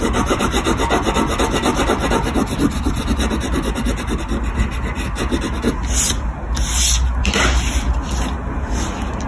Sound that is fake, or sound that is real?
real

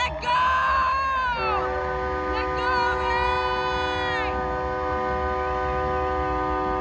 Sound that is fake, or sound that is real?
real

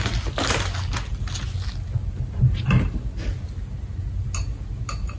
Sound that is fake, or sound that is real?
real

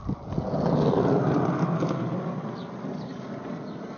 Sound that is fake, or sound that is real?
real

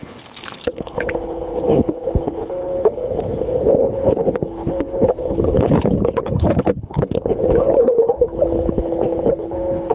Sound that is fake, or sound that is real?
fake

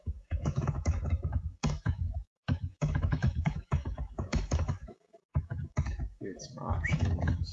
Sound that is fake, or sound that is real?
fake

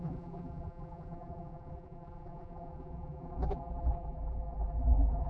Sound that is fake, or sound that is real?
fake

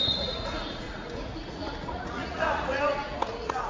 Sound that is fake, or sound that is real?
fake